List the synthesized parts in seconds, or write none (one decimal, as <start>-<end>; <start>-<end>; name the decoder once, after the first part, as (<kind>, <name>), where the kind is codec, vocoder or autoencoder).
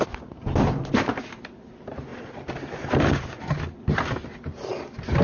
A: none